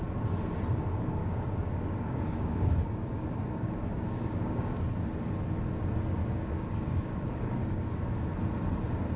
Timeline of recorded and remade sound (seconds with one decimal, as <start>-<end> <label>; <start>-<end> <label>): 0.0-1.2 recorded; 1.2-4.8 remade; 4.8-6.2 recorded; 6.2-8.0 remade; 8.0-9.2 recorded